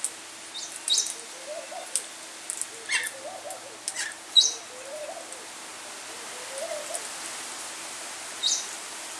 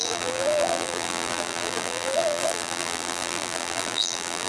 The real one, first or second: first